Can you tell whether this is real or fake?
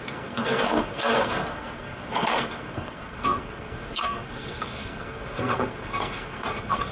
fake